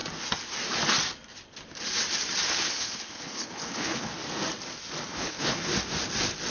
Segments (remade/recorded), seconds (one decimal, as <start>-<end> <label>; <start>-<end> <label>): 0.0-2.5 recorded; 2.5-4.1 remade; 4.1-5.1 recorded; 5.1-5.7 remade; 5.7-6.5 recorded